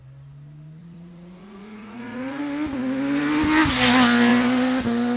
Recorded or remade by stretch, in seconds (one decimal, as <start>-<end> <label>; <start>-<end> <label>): 0.0-0.8 recorded; 0.8-2.4 remade; 2.4-5.2 recorded